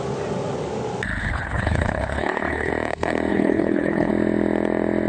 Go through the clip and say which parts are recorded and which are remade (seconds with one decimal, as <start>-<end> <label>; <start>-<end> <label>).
0.0-1.2 recorded; 1.2-2.7 remade; 2.7-3.3 recorded; 3.3-4.1 remade; 4.1-5.1 recorded